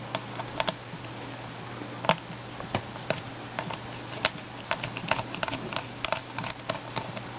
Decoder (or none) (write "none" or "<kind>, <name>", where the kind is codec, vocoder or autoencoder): none